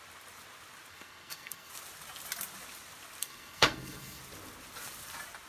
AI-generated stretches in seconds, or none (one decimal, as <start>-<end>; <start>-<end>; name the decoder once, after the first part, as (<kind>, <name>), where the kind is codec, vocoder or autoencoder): 0.9-1.7 (codec, SNAC); 3.2-4.2